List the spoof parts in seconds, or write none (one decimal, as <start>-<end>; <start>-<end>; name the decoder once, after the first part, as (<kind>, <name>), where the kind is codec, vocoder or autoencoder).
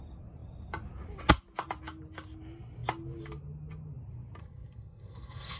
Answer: 4.4-5.6 (codec, SNAC)